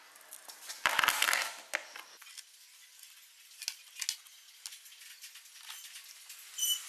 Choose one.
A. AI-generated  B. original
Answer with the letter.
B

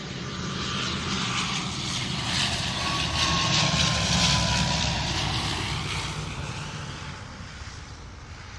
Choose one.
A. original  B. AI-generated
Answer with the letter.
B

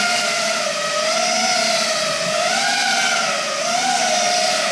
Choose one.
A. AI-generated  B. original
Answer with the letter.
A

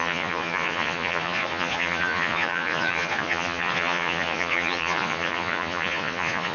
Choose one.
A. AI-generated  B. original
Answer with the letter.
A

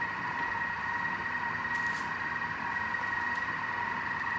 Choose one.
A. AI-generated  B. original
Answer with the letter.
A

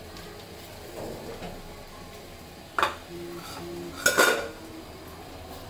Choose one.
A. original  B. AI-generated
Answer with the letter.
A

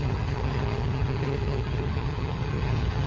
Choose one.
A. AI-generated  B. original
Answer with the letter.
A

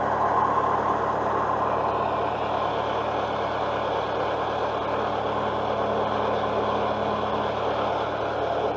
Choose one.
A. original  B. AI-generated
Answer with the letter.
A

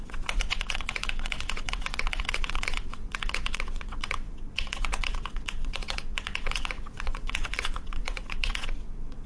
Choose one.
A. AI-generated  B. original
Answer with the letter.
A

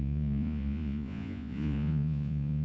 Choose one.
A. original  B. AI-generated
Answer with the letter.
B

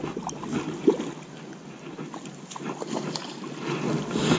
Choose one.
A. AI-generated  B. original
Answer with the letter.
B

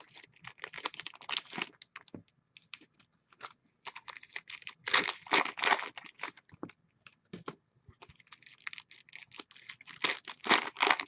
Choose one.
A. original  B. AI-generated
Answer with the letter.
A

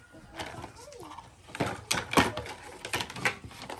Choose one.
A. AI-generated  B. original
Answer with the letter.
B